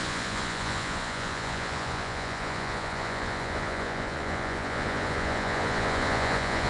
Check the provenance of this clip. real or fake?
fake